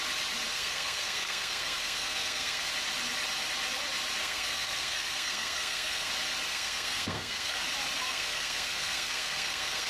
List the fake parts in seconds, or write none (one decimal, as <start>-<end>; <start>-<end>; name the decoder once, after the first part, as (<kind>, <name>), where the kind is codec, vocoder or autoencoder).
0.5-2.7 (codec, SNAC); 4.2-6.1; 6.5-7.6; 8.0-9.9